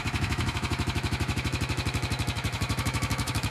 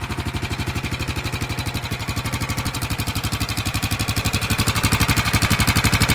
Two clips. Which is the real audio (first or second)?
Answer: second